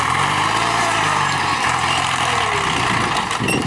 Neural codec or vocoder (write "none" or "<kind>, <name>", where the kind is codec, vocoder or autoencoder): none